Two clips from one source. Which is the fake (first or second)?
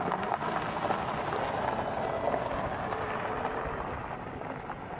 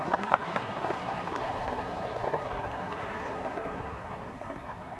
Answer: second